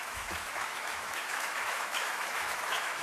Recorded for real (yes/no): no